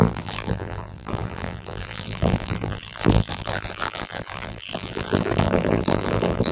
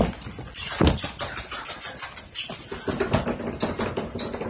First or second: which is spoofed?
first